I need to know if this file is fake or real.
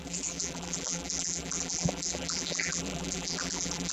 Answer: fake